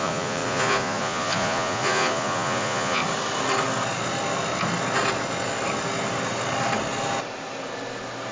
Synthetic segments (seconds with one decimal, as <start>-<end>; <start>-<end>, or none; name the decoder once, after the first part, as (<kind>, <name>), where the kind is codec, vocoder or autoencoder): 0.0-3.0 (vocoder, Vocos)